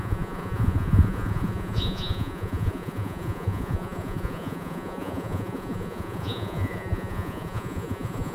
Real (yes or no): no